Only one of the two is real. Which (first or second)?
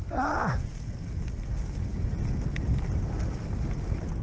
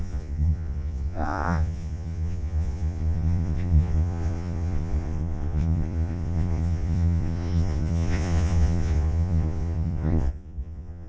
first